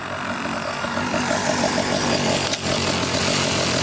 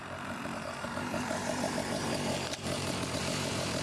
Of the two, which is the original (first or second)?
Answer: first